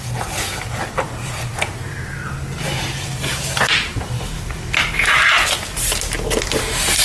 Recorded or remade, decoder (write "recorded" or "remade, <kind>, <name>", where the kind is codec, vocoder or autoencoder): recorded